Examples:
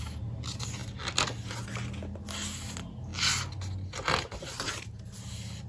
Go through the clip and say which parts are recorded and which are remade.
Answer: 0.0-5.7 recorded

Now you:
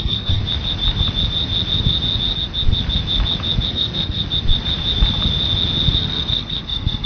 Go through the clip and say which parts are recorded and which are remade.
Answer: 0.0-0.4 remade; 0.4-3.7 recorded; 3.7-4.2 remade; 4.2-6.0 recorded; 6.0-7.1 remade

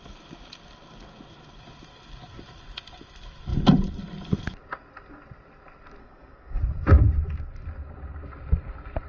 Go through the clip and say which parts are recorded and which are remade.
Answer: 0.0-6.0 recorded; 6.0-6.6 remade; 6.6-9.1 recorded

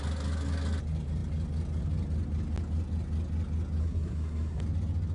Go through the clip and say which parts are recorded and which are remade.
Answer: 0.0-3.8 recorded; 3.8-4.6 remade; 4.6-5.1 recorded

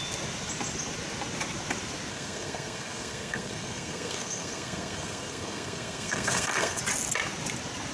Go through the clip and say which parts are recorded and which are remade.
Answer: 0.0-2.1 recorded; 2.1-6.8 remade; 6.8-7.9 recorded